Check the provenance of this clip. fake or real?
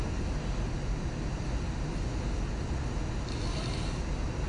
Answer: real